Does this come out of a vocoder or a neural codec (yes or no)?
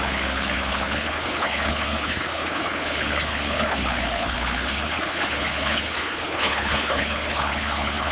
yes